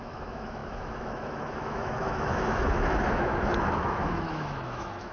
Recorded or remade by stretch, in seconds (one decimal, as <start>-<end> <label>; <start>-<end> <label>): 0.0-5.1 remade